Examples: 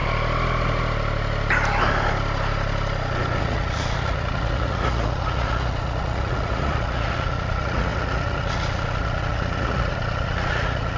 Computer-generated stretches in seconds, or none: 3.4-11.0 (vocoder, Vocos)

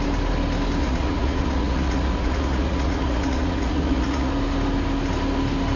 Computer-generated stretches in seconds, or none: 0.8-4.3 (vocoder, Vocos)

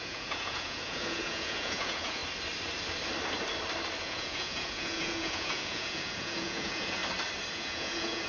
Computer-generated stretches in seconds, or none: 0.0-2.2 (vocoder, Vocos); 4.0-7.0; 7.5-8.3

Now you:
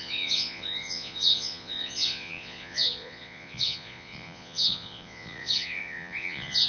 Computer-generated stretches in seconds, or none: 0.0-6.7 (vocoder, Vocos)

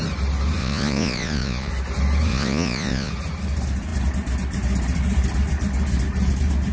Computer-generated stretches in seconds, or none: 0.6-1.7 (vocoder, Vocos); 2.3-3.1

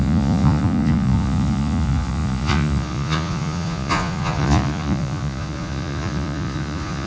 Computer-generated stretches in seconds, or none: 0.0-7.1 (vocoder, Vocos)